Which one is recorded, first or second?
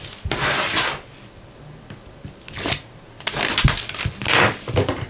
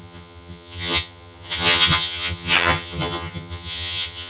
first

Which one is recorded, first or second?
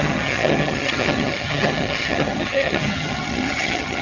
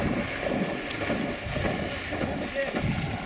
second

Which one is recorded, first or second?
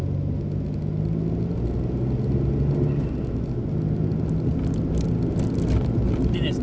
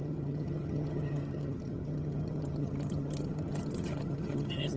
first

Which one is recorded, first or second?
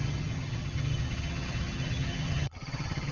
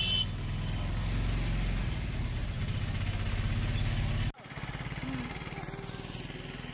second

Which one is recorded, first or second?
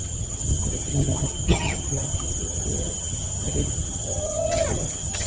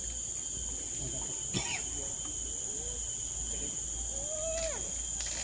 second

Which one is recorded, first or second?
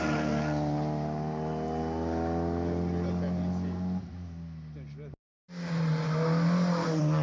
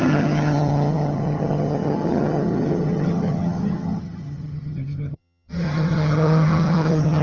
first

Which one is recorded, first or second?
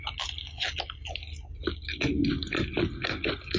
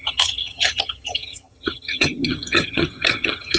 first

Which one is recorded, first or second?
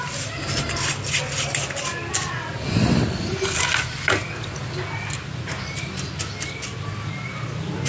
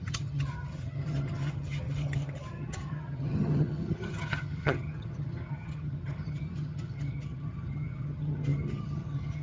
first